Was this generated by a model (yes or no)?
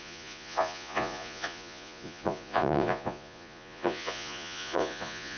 yes